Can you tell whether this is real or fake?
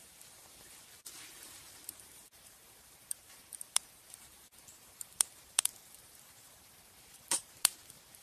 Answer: fake